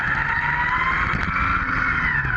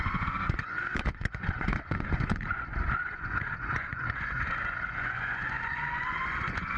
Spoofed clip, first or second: second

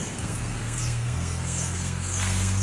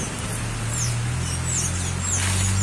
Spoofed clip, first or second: first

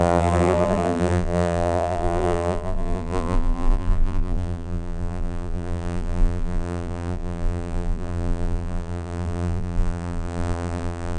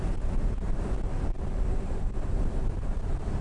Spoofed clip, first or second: first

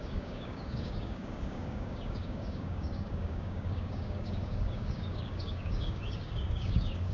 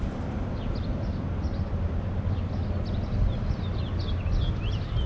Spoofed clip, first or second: first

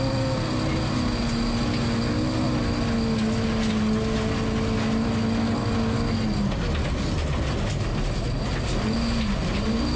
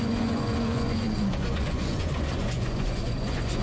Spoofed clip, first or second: second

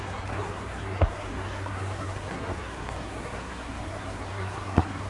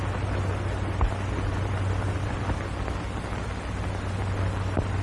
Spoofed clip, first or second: first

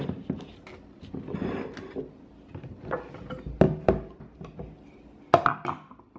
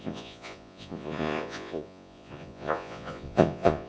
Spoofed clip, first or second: second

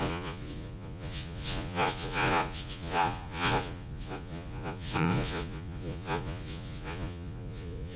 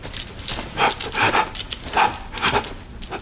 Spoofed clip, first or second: first